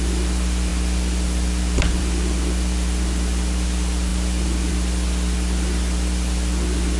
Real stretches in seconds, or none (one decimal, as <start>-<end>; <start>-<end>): 0.0-7.0